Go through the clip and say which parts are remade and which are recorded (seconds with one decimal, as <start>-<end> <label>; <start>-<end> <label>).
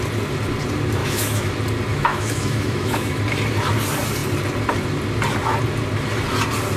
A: 0.0-1.0 recorded; 1.0-1.5 remade; 1.5-1.9 recorded; 1.9-3.2 remade; 3.2-6.8 recorded